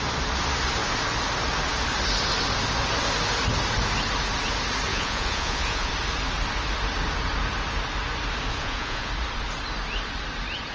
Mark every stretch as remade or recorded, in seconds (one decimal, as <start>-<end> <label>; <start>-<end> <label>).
0.0-4.9 recorded; 4.9-5.9 remade; 5.9-8.5 recorded; 8.5-9.1 remade; 9.1-10.7 recorded